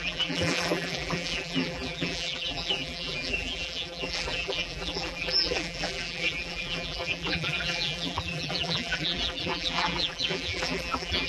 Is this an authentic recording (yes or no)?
no